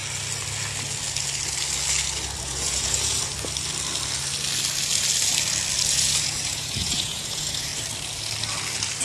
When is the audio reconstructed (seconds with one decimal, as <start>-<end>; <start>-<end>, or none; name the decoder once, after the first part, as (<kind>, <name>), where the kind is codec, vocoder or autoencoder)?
2.4-3.3 (vocoder, Vocos); 5.9-7.7